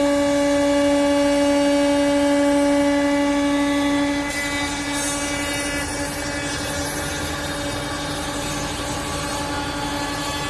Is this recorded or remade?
recorded